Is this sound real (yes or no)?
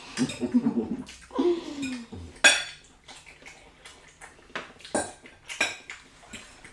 yes